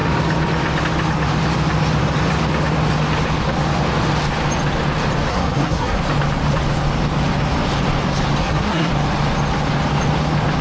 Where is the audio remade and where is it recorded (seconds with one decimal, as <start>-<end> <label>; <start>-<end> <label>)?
0.0-5.3 recorded; 5.3-6.0 remade; 6.0-8.4 recorded; 8.4-8.9 remade; 8.9-10.6 recorded